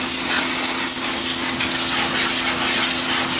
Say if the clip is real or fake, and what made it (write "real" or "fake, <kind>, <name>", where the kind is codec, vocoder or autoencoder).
real